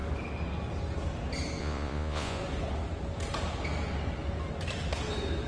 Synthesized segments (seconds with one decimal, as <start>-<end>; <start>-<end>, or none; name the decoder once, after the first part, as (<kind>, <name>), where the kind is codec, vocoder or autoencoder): 1.6-2.4 (vocoder, Vocos)